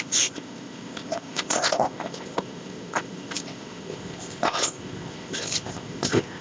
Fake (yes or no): yes